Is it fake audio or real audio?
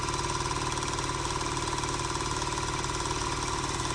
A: real